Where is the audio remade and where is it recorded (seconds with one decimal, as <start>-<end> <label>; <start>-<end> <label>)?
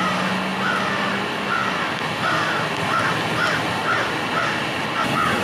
0.0-5.4 recorded